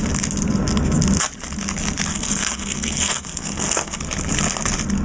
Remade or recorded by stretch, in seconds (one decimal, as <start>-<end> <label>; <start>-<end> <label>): 0.0-2.1 recorded; 2.1-4.0 remade; 4.0-5.0 recorded